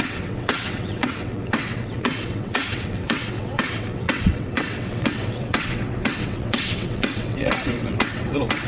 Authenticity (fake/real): fake